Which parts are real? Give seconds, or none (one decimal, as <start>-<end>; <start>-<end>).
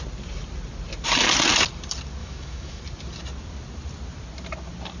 0.0-2.2; 2.8-5.0